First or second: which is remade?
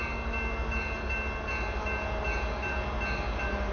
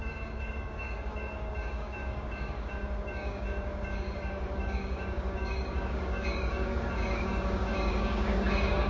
second